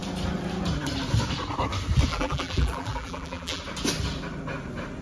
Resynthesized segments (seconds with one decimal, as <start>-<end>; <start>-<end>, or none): 2.1-3.6